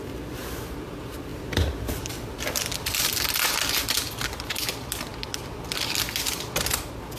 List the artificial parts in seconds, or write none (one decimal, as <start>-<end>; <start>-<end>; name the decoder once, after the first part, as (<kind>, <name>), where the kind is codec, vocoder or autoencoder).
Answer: none